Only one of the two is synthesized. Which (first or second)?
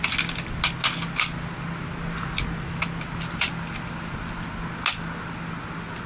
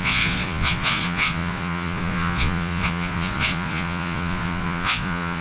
second